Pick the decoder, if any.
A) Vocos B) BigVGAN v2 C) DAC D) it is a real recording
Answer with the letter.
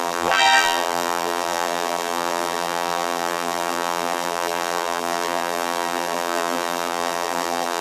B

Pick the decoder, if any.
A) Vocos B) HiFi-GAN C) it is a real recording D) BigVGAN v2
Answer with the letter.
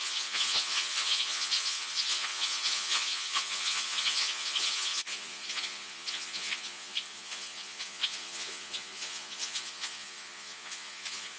A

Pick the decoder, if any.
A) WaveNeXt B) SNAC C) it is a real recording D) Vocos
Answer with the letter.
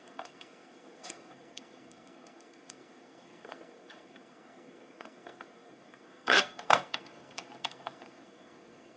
B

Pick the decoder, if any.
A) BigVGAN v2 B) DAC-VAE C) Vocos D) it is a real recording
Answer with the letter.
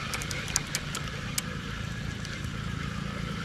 D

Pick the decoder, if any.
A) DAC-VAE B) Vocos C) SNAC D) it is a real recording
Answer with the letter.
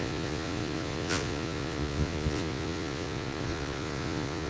B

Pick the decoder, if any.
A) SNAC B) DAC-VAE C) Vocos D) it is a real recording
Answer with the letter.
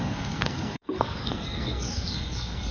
A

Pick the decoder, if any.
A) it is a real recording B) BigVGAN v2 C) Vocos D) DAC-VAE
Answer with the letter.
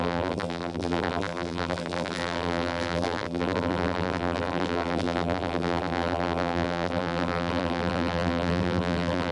B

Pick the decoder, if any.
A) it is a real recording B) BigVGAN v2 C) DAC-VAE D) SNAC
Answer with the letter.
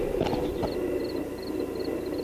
A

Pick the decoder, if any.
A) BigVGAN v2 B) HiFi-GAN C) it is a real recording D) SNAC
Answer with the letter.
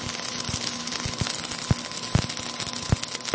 C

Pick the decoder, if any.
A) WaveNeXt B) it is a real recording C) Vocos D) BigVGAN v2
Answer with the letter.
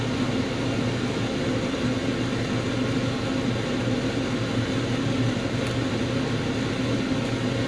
B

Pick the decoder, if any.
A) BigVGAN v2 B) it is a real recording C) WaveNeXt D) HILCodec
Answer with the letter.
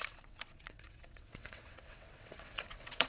C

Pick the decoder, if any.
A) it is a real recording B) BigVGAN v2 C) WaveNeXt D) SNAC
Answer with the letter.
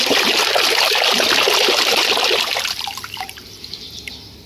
B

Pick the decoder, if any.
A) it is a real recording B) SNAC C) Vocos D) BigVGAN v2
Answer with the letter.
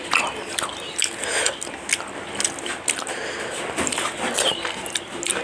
A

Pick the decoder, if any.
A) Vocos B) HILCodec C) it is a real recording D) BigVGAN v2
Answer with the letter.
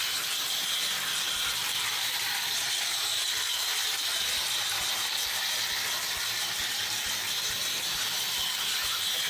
D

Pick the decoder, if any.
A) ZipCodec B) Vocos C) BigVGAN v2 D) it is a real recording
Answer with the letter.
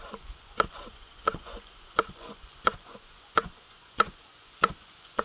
B